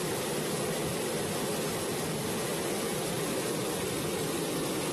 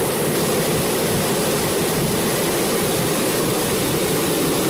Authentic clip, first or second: first